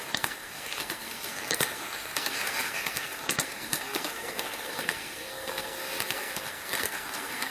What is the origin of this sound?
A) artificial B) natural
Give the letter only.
A